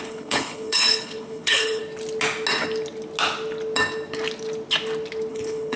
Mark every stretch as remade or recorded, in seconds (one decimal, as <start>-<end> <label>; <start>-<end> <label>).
0.0-1.8 remade; 1.8-5.3 recorded; 5.3-5.8 remade